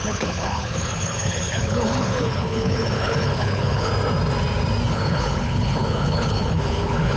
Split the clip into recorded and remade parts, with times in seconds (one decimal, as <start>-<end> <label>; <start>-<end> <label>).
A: 0.0-3.9 remade; 3.9-4.9 recorded; 4.9-7.2 remade